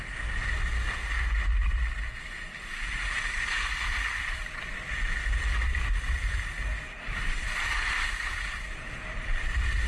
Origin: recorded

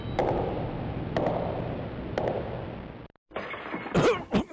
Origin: recorded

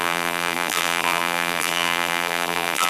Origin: remade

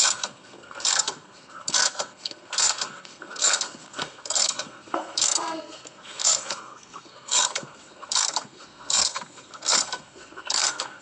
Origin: remade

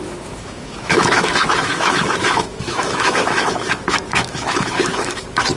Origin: remade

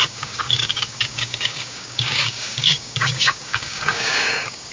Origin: remade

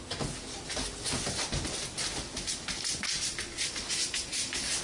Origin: recorded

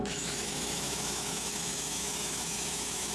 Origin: remade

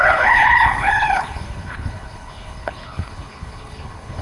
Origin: remade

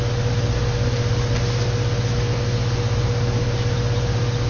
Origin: recorded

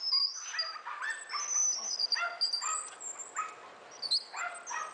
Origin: recorded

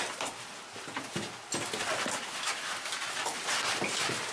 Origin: recorded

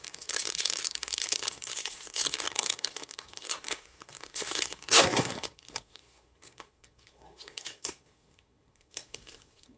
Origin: remade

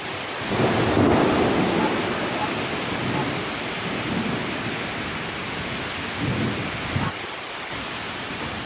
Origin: remade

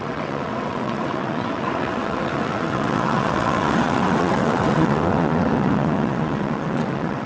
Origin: remade